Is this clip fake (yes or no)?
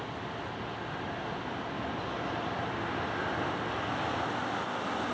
no